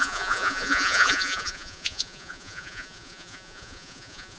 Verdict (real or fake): fake